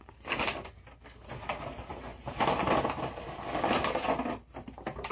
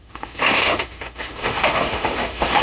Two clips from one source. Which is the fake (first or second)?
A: second